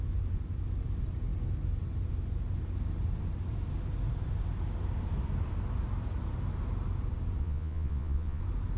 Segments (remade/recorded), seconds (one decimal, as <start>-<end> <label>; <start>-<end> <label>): 0.0-7.4 recorded; 7.4-8.4 remade; 8.4-8.8 recorded